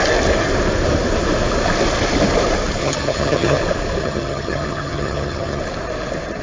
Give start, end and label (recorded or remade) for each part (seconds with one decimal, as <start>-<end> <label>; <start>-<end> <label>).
0.0-2.8 recorded; 2.8-3.6 remade; 3.6-4.0 recorded; 4.0-5.6 remade; 5.6-6.4 recorded